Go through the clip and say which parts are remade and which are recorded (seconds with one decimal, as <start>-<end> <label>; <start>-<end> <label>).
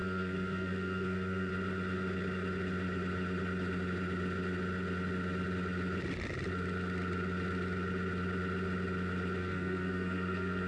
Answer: 0.0-1.5 remade; 1.5-9.4 recorded; 9.4-10.7 remade